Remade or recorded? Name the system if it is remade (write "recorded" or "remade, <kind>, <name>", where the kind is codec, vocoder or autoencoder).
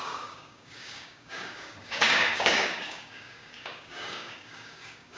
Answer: remade, codec, DAC